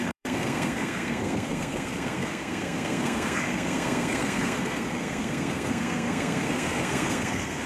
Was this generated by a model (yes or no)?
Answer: yes